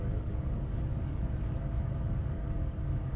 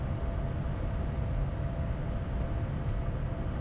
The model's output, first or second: first